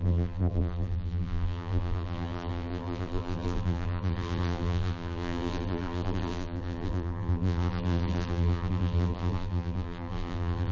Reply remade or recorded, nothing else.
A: remade